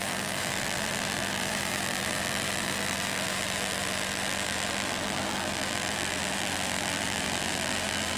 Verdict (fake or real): fake